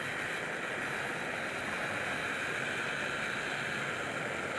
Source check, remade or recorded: recorded